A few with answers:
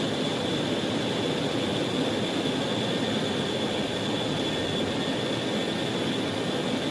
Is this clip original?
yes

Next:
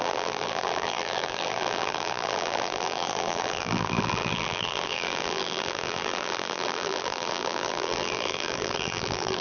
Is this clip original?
no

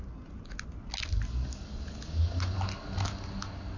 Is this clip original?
yes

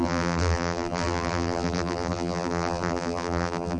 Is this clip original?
no